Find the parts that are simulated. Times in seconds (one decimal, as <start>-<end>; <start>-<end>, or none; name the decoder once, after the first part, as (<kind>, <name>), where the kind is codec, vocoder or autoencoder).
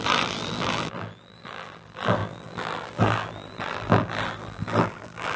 0.0-5.4 (vocoder, BigVGAN v2)